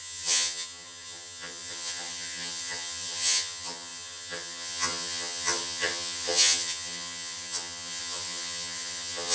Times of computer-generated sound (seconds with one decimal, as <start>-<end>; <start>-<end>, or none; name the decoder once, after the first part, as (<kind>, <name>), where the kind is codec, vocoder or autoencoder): 0.0-9.3 (vocoder, HiFi-GAN)